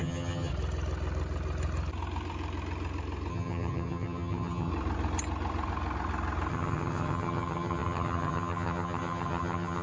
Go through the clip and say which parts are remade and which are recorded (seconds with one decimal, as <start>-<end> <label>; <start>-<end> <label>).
0.0-0.5 remade; 0.5-3.3 recorded; 3.3-4.7 remade; 4.7-6.5 recorded; 6.5-9.8 remade